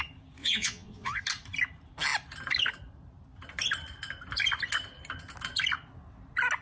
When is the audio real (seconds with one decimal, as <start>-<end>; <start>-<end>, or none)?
0.0-0.4; 1.2-6.6